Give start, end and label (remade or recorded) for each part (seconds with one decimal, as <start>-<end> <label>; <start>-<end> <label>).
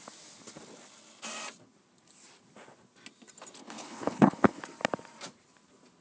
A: 0.0-3.6 recorded; 3.6-4.6 remade; 4.6-6.0 recorded